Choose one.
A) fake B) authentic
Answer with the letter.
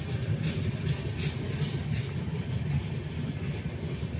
B